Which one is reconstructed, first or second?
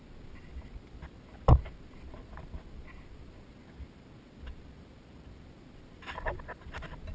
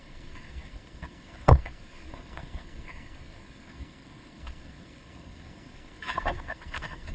second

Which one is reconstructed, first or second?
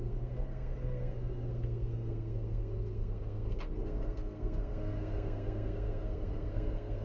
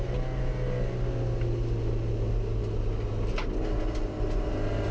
first